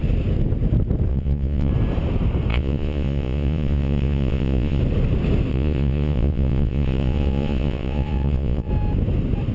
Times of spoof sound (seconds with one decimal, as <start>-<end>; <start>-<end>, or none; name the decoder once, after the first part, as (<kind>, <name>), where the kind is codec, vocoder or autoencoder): 1.1-1.7 (vocoder, Vocos); 2.5-4.8; 5.5-8.7